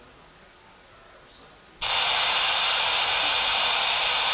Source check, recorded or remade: recorded